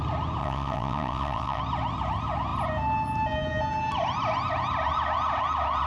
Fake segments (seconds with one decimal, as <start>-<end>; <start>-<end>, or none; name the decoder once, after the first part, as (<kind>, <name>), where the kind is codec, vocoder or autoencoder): 0.4-1.6 (vocoder, WaveNeXt)